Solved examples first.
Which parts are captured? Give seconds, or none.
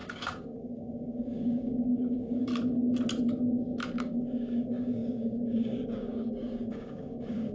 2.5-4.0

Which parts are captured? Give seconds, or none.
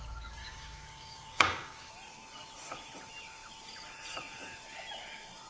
0.0-0.4; 1.9-5.5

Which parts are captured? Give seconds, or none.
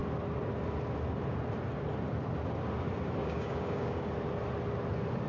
0.0-3.2; 4.1-5.3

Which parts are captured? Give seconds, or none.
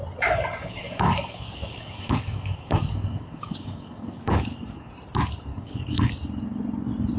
0.0-0.6; 4.9-5.5; 6.1-7.2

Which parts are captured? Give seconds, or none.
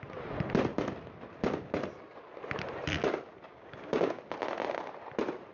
0.0-3.5; 4.2-5.5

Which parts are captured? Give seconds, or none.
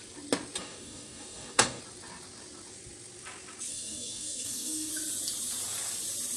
0.0-0.6; 1.8-3.7; 4.9-6.4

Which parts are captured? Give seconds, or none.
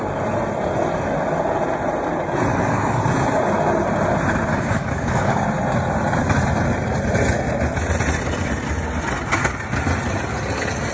0.0-2.5; 3.0-4.5; 5.4-10.9